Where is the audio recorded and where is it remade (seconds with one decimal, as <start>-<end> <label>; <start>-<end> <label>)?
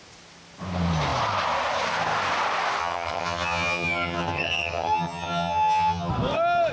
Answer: 0.0-2.8 recorded; 2.8-6.1 remade; 6.1-6.7 recorded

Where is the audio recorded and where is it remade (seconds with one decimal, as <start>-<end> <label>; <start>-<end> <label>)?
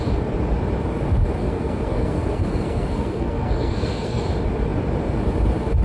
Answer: 0.0-1.4 recorded; 1.4-4.2 remade; 4.2-5.8 recorded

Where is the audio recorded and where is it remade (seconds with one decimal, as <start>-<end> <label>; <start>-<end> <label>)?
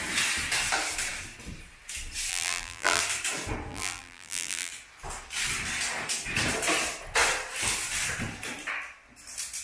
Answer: 0.0-2.3 recorded; 2.3-3.0 remade; 3.0-3.7 recorded; 3.7-4.7 remade; 4.7-9.6 recorded